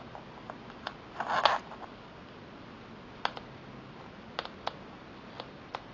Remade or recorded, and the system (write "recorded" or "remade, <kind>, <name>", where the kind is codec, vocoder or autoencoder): recorded